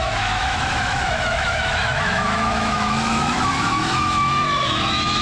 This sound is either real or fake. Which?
fake